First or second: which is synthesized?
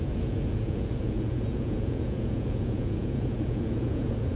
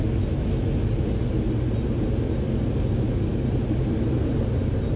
first